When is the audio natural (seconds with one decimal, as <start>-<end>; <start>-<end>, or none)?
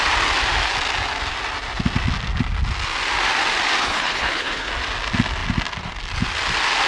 0.0-3.8; 4.7-6.9